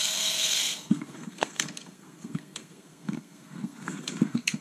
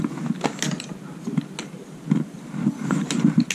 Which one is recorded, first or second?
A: second